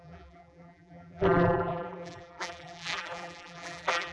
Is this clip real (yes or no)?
no